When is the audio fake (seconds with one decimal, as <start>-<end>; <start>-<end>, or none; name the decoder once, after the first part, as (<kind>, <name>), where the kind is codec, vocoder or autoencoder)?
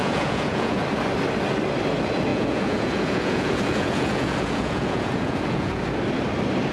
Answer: 0.0-0.8 (vocoder, Vocos); 2.3-5.8